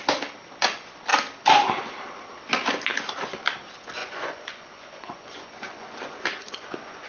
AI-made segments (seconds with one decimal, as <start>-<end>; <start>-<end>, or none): 4.0-7.1